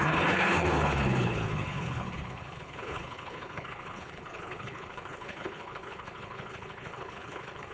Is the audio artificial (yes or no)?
yes